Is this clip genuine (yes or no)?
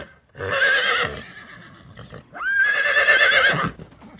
yes